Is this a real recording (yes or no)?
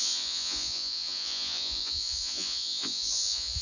no